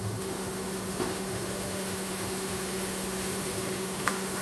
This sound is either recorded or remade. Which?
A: remade